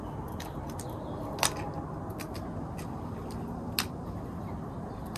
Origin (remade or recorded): recorded